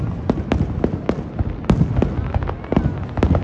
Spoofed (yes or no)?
no